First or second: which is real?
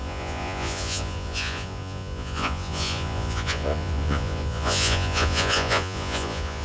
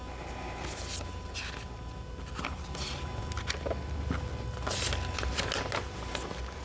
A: second